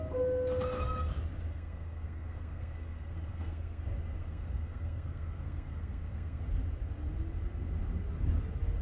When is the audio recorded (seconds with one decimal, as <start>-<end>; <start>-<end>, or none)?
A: 0.0-1.5; 3.8-4.2; 6.4-8.8